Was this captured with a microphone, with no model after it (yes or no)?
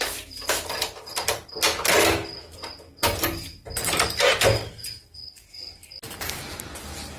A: yes